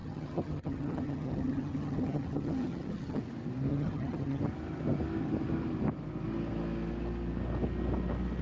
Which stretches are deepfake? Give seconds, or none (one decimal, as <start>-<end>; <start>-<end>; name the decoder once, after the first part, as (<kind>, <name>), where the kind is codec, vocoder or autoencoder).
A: 0.0-3.2 (vocoder, HiFi-GAN); 3.7-4.4